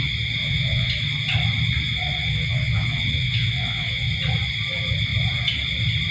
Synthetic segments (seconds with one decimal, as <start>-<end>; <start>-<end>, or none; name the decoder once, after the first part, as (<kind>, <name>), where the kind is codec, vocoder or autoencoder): 0.4-0.9 (vocoder, WaveNeXt); 2.2-4.1